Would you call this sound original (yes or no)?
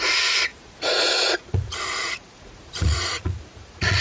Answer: no